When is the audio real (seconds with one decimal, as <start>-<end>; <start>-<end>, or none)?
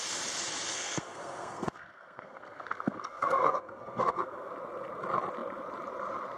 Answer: 0.0-0.7; 4.5-6.4